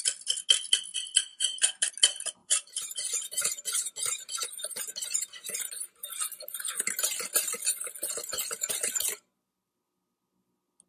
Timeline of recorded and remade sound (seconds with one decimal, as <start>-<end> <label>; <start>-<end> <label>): 0.0-1.3 recorded; 1.3-1.9 remade; 1.9-2.4 recorded; 2.4-5.8 remade; 5.8-10.9 recorded